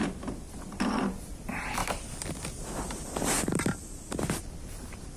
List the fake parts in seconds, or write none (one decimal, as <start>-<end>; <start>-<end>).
0.0-1.8; 2.8-5.2